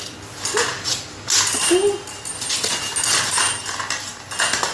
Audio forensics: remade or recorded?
recorded